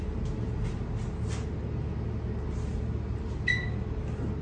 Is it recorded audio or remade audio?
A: recorded